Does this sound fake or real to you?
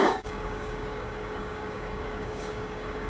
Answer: fake